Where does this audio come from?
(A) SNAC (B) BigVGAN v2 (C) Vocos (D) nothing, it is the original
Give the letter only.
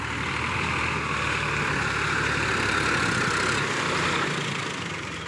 B